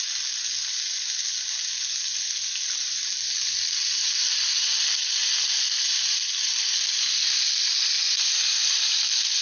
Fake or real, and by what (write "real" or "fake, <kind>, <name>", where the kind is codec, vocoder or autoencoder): real